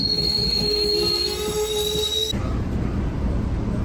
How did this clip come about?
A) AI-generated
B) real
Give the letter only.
B